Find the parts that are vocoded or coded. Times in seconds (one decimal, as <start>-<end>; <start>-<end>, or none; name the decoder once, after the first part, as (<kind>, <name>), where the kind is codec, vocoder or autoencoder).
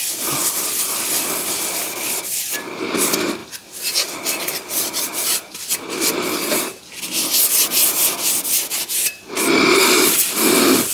3.4-6.8 (vocoder, BigVGAN v2)